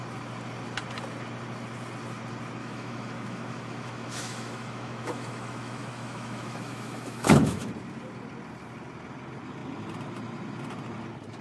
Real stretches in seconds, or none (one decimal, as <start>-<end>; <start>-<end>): 0.0-2.6; 7.7-11.4